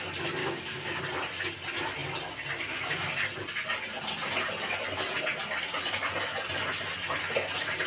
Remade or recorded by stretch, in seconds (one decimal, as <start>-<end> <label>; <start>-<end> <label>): 0.0-0.4 recorded; 0.4-1.0 remade; 1.0-7.9 recorded